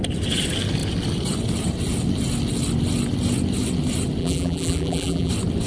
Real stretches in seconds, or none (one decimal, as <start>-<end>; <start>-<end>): 0.0-4.2; 5.3-5.7